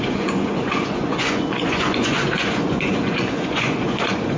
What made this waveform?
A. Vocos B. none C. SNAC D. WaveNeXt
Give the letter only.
A